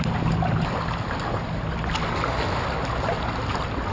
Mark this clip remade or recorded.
recorded